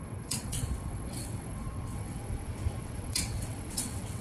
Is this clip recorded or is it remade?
remade